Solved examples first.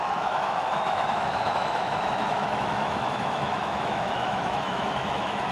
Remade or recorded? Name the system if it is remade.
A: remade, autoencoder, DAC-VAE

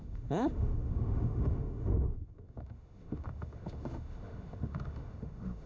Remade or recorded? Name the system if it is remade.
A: remade, autoencoder, DAC-VAE